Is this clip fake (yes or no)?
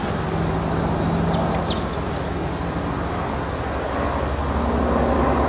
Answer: no